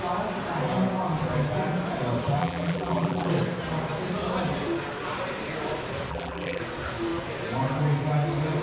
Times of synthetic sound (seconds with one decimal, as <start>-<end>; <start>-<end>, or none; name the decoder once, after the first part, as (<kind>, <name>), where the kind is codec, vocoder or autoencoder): 2.4-3.3 (vocoder, BigVGAN v2); 6.1-6.6